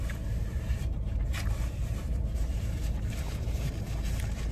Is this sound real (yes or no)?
no